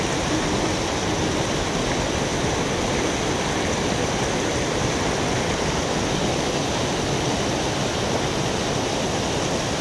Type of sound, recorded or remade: recorded